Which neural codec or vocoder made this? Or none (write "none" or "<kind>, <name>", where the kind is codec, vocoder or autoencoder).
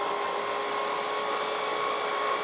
none